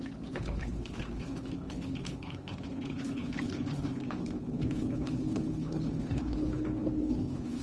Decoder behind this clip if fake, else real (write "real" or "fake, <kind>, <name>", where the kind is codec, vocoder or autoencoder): fake, codec, HILCodec